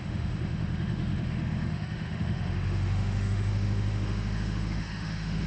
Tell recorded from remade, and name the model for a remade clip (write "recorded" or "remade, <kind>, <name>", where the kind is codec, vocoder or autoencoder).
remade, autoencoder, DAC-VAE